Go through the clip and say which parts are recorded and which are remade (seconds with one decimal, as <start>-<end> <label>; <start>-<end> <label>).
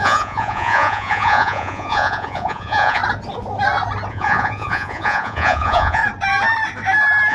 0.0-3.0 remade; 3.0-4.1 recorded; 4.1-6.0 remade; 6.0-7.3 recorded